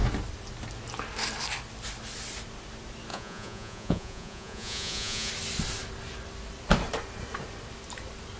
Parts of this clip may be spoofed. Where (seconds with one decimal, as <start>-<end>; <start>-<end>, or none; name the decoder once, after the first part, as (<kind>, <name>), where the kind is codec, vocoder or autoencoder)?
3.1-5.3 (vocoder, Vocos)

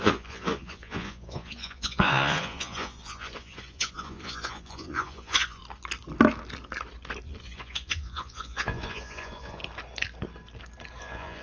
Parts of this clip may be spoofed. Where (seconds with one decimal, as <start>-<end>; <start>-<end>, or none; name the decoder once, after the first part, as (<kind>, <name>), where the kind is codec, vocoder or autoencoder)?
0.0-5.6 (vocoder, Vocos); 7.4-9.6; 11.0-11.4

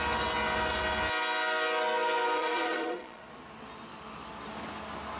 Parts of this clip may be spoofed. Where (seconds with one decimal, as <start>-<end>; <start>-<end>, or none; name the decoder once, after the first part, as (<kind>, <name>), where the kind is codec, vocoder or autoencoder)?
2.4-3.2 (vocoder, Vocos)

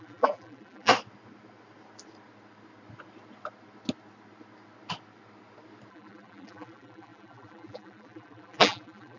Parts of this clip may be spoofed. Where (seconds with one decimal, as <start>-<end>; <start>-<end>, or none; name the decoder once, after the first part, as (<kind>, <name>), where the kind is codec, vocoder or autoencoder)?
0.0-0.9 (vocoder, BigVGAN v2); 5.9-9.2